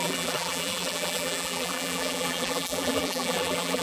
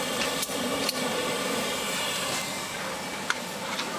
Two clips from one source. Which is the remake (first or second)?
first